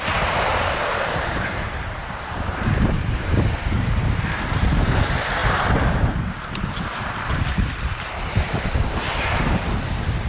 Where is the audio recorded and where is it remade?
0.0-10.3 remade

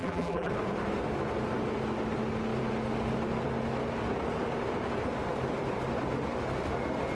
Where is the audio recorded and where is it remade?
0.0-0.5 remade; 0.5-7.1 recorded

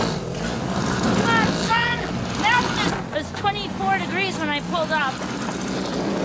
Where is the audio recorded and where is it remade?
0.0-1.6 recorded; 1.6-2.1 remade; 2.1-6.2 recorded